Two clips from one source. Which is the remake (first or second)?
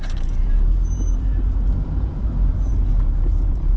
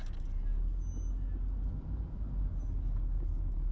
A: first